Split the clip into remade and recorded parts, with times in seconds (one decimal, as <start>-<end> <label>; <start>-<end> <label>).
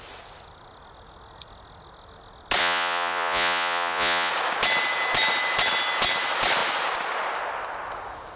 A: 0.0-2.6 recorded; 2.6-4.3 remade; 4.3-8.4 recorded